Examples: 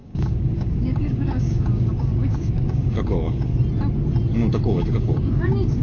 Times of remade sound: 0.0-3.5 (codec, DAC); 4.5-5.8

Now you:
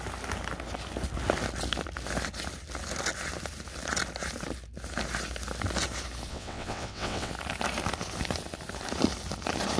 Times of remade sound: 6.3-7.3 (vocoder, WaveNeXt)

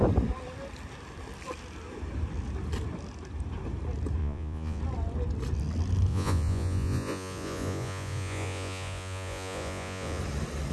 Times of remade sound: 4.2-4.8 (vocoder, Vocos); 6.1-10.2

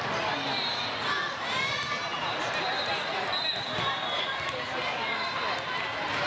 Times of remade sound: none

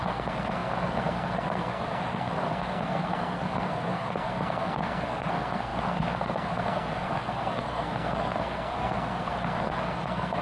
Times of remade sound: 0.0-10.4 (codec, SNAC)

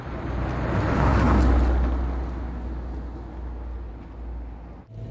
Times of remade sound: none

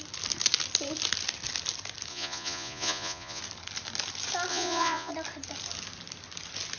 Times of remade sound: 2.1-3.4 (vocoder, Vocos); 4.5-5.1